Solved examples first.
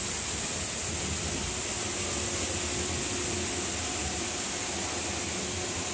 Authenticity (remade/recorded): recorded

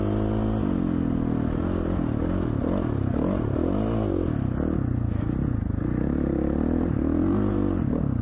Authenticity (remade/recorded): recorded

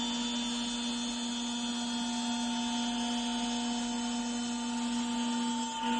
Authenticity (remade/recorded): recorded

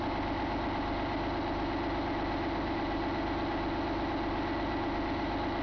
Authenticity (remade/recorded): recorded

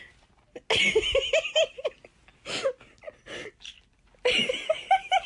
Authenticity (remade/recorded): recorded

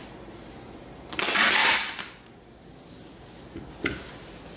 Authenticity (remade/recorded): recorded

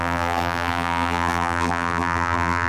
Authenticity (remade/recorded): remade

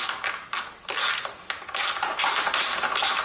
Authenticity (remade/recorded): recorded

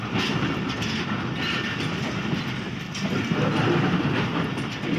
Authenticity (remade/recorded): recorded